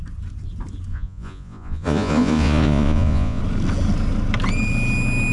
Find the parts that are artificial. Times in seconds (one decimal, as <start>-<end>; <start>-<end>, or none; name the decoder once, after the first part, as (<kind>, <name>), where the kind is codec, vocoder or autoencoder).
0.9-3.4 (vocoder, Vocos)